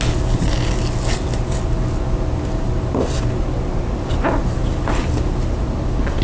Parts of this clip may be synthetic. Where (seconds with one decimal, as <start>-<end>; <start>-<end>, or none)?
none